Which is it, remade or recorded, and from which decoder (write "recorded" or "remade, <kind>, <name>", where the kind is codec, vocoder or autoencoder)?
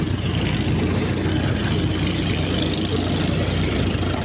recorded